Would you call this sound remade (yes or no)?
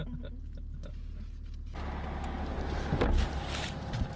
no